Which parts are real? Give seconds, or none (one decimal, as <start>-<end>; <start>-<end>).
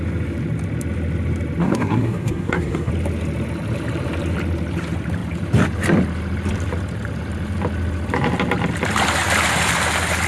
0.0-1.6; 2.9-10.3